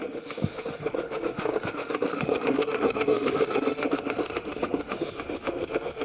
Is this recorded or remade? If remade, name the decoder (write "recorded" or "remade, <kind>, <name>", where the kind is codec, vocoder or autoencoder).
remade, autoencoder, DAC-VAE